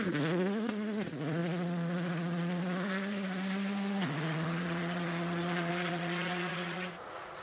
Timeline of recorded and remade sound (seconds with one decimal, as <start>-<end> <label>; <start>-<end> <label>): 0.0-7.4 remade